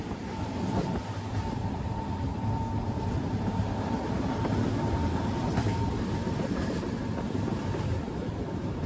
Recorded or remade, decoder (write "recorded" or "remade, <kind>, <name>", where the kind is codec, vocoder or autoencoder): recorded